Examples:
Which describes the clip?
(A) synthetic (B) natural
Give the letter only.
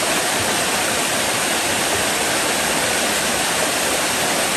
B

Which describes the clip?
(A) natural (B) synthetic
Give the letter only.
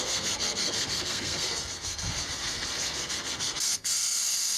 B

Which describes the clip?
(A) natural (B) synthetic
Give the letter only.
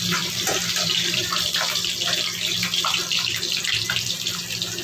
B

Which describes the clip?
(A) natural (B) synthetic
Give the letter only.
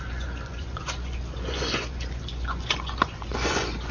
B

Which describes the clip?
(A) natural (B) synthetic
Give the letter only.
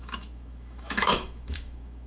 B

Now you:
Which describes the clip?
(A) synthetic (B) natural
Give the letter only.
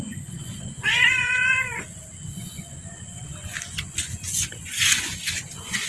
A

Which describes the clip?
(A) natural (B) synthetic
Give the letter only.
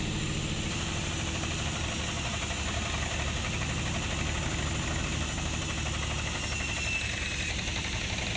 A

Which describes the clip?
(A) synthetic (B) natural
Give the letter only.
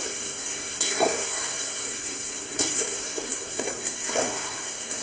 A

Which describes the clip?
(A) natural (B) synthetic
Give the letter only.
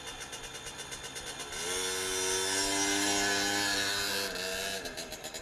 A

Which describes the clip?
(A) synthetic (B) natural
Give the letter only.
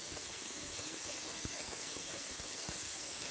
A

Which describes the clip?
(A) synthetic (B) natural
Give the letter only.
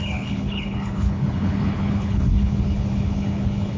A